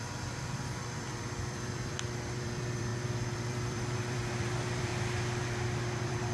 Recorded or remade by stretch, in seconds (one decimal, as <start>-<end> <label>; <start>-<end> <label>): 0.0-4.9 remade; 4.9-5.8 recorded; 5.8-6.3 remade